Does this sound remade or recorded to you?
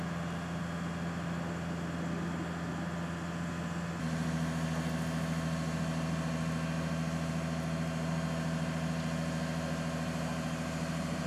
recorded